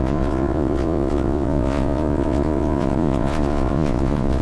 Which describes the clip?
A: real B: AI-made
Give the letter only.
B